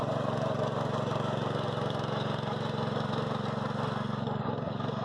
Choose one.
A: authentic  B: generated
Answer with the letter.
A